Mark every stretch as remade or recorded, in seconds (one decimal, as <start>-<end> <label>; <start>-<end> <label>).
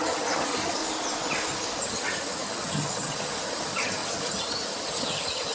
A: 0.0-0.8 remade; 0.8-1.8 recorded; 1.8-5.5 remade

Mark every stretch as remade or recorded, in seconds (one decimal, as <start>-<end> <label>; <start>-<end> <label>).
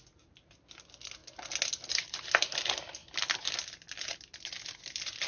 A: 0.0-5.3 recorded